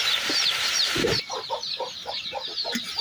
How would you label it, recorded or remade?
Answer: remade